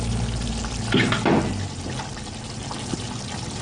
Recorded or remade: recorded